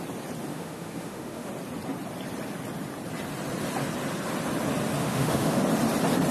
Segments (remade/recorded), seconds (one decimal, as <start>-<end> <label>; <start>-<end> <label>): 0.0-0.5 recorded; 0.5-1.5 remade; 1.5-5.0 recorded; 5.0-5.6 remade; 5.6-6.3 recorded